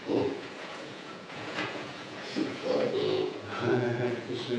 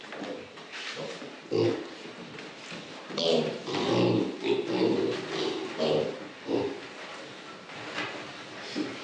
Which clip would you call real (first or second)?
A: second